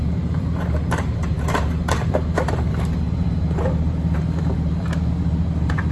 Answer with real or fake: fake